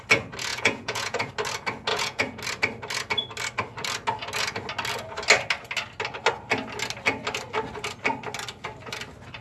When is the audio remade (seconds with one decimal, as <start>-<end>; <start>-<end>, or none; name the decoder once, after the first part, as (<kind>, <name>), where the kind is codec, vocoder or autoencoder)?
0.5-1.3 (vocoder, Vocos); 1.9-2.4